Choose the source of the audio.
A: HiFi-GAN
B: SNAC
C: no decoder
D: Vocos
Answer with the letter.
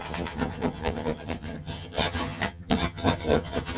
A